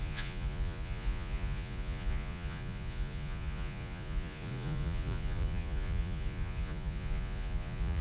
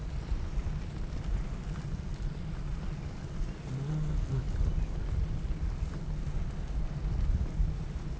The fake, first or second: first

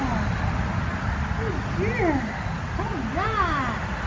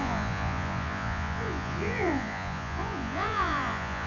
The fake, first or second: second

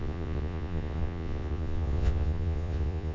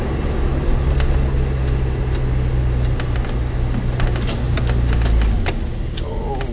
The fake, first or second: first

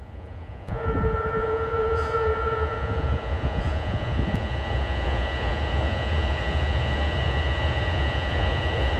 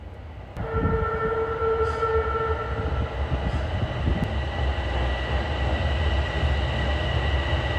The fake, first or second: first